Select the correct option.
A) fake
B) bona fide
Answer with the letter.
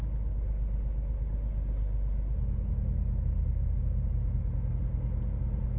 B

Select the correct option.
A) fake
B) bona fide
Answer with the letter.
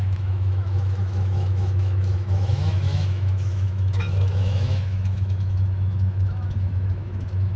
A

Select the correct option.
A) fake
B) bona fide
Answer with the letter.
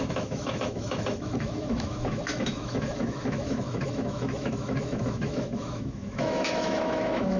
A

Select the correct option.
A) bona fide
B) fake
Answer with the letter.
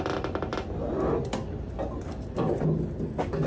A